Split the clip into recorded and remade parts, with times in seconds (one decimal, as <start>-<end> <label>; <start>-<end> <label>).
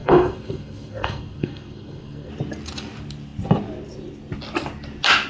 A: 0.0-2.3 remade; 2.3-5.3 recorded